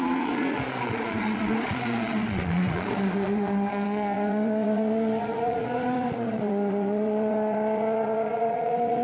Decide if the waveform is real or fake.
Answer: fake